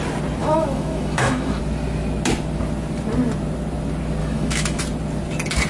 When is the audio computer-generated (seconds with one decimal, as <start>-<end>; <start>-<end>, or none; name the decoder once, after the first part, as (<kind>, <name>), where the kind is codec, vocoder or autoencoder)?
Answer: 0.4-1.6 (autoencoder, DAC-VAE); 4.2-4.8